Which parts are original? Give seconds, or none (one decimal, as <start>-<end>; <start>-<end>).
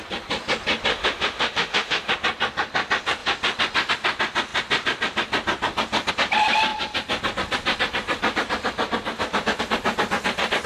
0.0-0.9; 2.1-10.7